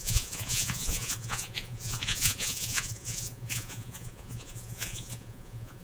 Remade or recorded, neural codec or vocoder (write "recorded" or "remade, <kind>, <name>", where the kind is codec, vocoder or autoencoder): remade, vocoder, Vocos